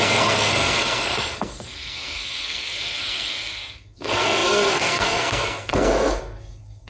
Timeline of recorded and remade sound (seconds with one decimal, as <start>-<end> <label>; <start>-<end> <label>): 0.0-6.9 remade